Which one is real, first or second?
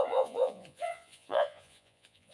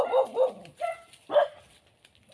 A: second